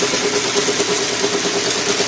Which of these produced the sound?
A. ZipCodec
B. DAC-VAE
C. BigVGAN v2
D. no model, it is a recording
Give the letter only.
D